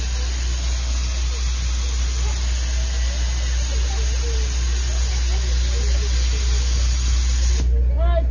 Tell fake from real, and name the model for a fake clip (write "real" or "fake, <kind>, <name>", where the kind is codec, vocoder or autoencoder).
real